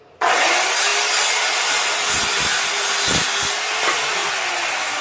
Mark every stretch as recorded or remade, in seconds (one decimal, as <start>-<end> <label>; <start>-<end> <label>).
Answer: 0.0-4.2 recorded; 4.2-5.0 remade